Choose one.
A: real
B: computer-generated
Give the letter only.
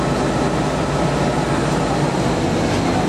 A